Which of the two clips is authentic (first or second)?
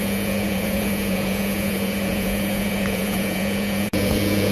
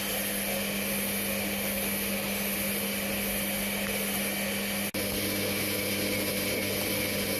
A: second